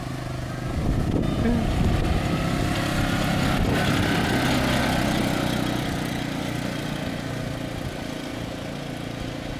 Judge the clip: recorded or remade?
recorded